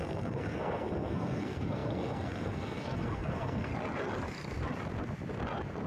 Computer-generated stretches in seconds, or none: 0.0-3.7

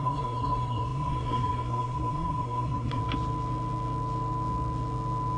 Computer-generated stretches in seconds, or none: 0.0-3.0

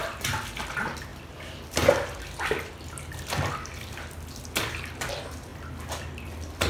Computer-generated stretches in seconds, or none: none